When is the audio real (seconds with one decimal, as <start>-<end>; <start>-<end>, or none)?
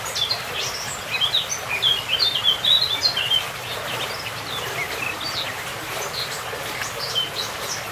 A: 0.0-7.9